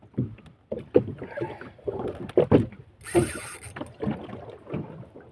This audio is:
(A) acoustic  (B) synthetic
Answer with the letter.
A